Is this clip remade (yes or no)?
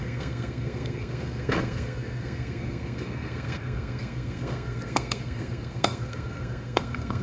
yes